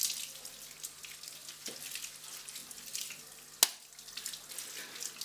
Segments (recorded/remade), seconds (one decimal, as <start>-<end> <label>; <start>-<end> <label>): 0.0-2.6 recorded; 2.6-3.1 remade; 3.1-3.7 recorded; 3.7-4.3 remade; 4.3-5.2 recorded